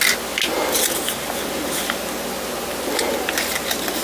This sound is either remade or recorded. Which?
recorded